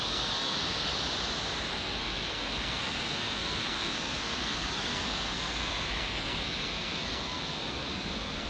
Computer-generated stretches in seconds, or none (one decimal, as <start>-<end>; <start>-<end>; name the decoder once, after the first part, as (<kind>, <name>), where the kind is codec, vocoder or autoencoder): 0.0-0.9 (codec, SNAC); 1.7-8.5